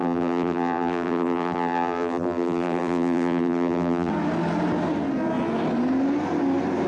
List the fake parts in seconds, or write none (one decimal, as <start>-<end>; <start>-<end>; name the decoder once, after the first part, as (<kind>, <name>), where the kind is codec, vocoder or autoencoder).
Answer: 0.0-4.1 (vocoder, BigVGAN v2)